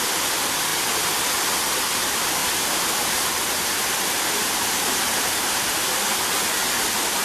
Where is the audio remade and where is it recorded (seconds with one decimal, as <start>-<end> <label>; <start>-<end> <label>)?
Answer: 0.0-2.4 recorded; 2.4-3.1 remade; 3.1-7.2 recorded